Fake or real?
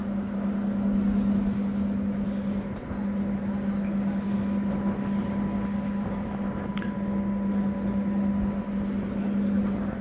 real